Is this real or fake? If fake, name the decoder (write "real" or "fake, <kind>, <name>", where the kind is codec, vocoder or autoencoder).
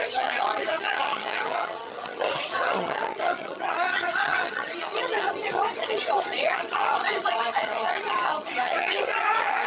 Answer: fake, vocoder, HiFi-GAN